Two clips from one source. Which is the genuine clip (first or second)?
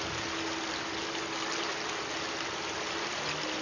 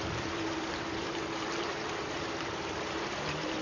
first